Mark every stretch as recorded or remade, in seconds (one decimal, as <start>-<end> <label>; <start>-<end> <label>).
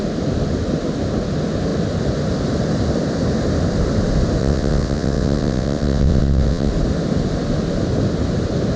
0.0-4.4 recorded; 4.4-6.7 remade; 6.7-8.8 recorded